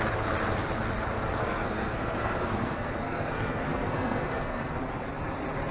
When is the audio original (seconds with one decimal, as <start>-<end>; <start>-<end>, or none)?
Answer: 0.0-1.4; 4.8-5.7